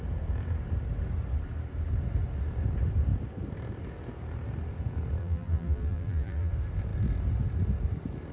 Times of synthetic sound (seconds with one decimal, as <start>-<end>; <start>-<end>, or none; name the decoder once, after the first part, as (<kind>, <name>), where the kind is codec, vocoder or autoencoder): 5.2-6.5 (vocoder, BigVGAN v2)